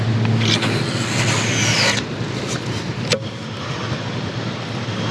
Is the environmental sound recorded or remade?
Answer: recorded